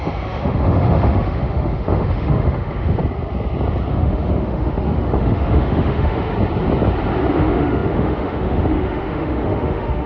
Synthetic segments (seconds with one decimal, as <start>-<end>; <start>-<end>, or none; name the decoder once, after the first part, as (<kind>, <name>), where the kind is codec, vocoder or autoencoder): 0.0-3.0 (autoencoder, DAC-VAE); 3.9-6.3; 7.3-10.1